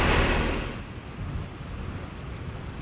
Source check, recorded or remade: recorded